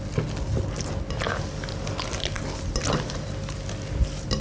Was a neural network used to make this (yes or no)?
no